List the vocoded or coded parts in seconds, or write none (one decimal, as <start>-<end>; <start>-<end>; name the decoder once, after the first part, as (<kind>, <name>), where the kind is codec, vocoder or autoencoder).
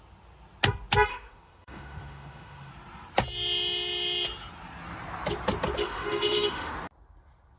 1.1-2.7 (autoencoder, DAC-VAE); 5.8-6.7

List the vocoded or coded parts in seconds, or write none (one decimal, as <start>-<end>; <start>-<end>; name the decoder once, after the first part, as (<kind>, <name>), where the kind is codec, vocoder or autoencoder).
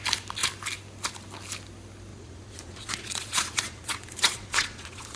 2.1-5.2 (vocoder, Vocos)